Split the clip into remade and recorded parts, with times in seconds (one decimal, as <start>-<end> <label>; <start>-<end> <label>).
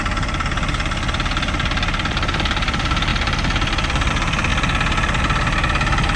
0.0-4.5 remade; 4.5-5.2 recorded; 5.2-6.2 remade